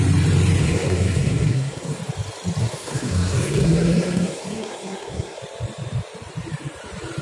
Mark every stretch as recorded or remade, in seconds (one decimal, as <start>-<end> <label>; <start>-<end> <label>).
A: 0.0-0.6 recorded; 0.6-2.0 remade; 2.0-2.6 recorded; 2.6-5.4 remade; 5.4-7.2 recorded